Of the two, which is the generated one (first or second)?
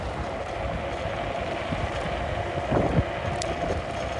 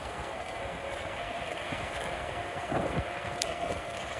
second